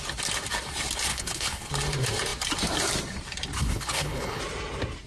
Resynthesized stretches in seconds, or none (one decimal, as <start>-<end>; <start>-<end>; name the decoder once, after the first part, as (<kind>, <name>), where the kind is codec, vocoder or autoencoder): 1.1-1.7 (codec, HILCodec); 3.6-4.4